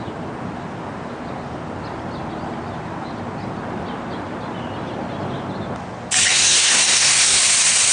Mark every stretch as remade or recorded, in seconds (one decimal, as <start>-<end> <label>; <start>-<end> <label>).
0.0-6.3 recorded; 6.3-7.4 remade; 7.4-7.9 recorded